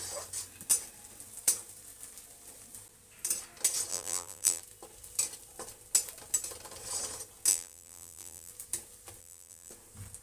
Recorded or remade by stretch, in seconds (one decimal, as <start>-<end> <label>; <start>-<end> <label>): 0.0-3.9 recorded; 3.9-4.6 remade; 4.6-7.5 recorded; 7.5-8.5 remade; 8.5-9.2 recorded; 9.2-9.7 remade; 9.7-10.2 recorded